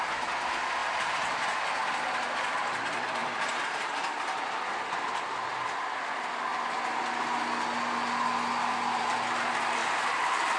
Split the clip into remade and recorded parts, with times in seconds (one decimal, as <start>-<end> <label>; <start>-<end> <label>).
0.0-9.8 recorded; 9.8-10.6 remade